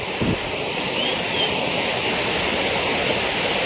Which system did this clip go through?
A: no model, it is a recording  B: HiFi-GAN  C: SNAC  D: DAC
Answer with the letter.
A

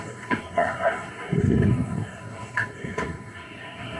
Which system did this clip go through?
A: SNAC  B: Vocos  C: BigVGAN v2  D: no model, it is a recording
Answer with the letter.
A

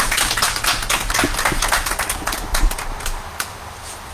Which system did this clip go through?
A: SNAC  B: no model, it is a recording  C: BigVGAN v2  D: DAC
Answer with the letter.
B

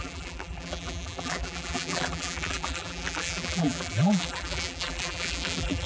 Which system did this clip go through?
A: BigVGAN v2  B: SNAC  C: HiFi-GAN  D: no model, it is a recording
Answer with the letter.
A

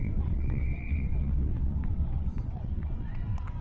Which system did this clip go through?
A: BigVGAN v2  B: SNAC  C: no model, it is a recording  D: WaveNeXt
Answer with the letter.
D